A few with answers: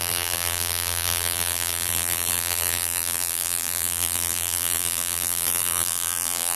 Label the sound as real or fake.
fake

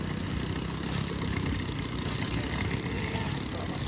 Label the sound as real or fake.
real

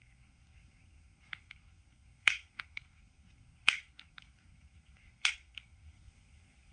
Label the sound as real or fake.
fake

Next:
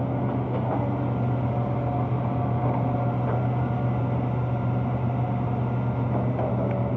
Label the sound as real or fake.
real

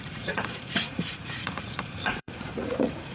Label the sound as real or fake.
fake